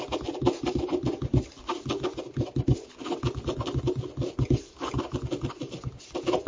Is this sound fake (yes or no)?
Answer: no